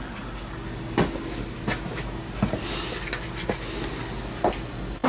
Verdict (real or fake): real